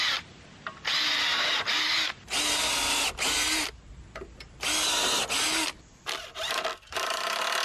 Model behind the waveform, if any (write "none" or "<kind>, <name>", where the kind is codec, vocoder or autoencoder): none